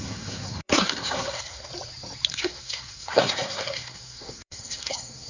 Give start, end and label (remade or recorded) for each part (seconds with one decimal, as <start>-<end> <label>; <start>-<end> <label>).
0.0-1.7 remade; 1.7-2.3 recorded; 2.3-5.3 remade